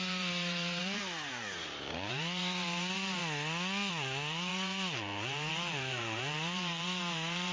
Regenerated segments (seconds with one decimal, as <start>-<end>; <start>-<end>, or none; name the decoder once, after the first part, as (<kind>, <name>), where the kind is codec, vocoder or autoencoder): 0.0-3.2 (vocoder, BigVGAN v2); 3.9-7.5